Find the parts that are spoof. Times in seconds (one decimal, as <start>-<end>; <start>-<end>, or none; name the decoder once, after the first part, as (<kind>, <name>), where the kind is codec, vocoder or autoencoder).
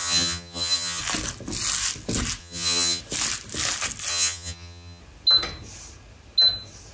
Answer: 0.0-1.0 (vocoder, HiFi-GAN); 2.4-3.0; 4.1-5.0